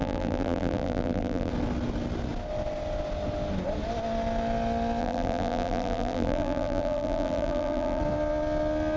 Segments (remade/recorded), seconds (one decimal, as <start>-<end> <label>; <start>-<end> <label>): 0.0-1.5 remade; 1.5-5.0 recorded; 5.0-8.0 remade; 8.0-9.0 recorded